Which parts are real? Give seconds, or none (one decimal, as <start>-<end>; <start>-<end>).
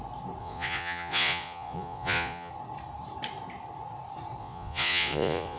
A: 0.0-0.4; 2.5-4.4